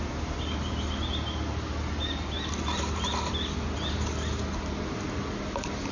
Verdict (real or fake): real